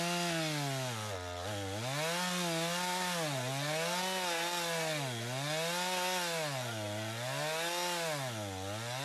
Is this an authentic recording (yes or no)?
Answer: yes